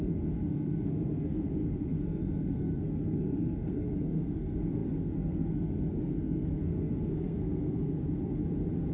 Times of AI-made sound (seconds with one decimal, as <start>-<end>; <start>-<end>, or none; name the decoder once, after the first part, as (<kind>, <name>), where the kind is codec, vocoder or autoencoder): 0.0-8.0 (codec, SNAC)